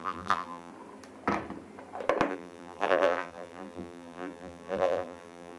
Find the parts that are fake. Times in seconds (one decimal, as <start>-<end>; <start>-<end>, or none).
0.0-0.7; 2.3-5.6